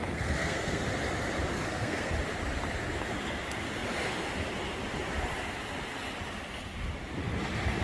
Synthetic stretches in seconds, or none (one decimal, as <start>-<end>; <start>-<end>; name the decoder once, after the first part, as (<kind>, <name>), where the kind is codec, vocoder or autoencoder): 0.0-0.8 (codec, SNAC); 1.5-2.1